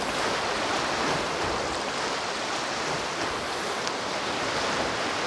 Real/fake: real